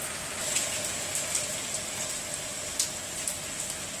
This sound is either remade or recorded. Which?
recorded